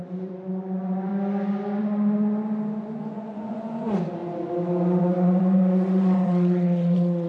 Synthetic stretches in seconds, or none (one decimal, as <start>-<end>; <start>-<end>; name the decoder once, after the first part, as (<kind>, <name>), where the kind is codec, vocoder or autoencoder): 0.0-1.1 (vocoder, Vocos); 1.8-4.2; 5.0-7.3